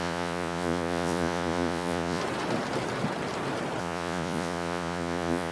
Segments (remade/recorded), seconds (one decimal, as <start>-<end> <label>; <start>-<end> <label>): 0.0-2.2 remade; 2.2-3.8 recorded; 3.8-5.5 remade